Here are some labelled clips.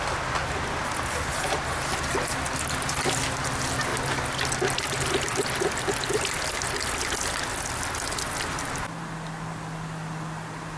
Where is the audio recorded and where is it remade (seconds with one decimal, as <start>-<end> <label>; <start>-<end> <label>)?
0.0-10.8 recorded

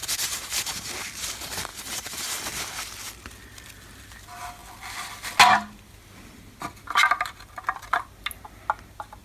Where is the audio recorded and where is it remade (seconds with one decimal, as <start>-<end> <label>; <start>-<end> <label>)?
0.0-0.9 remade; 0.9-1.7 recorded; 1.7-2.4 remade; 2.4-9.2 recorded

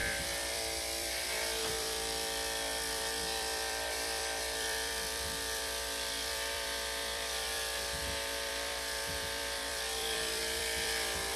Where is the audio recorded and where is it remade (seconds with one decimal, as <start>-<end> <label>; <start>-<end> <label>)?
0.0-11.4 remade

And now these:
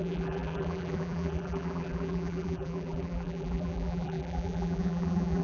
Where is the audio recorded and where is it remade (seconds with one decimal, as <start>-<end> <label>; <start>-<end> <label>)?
0.0-5.4 remade

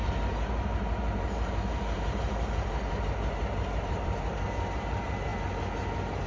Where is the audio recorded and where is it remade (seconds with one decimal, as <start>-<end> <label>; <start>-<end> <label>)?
0.0-5.3 remade; 5.3-6.3 recorded